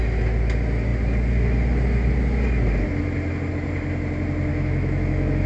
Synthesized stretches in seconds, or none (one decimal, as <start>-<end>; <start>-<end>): 4.5-5.5